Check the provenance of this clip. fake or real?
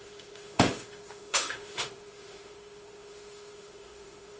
fake